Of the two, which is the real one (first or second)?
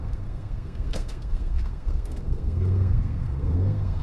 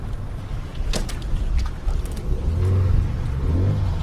second